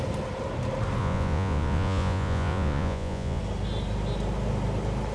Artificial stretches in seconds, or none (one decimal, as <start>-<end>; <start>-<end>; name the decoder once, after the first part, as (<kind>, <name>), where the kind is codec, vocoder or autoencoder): 1.0-3.4 (vocoder, Vocos)